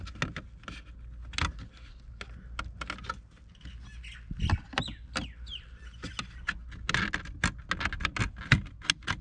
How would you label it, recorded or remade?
recorded